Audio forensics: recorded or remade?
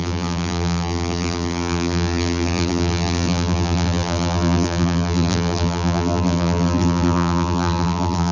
remade